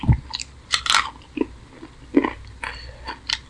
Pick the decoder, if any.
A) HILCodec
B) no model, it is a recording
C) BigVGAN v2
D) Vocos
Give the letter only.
B